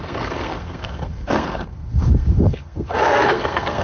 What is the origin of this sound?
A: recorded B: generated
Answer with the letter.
B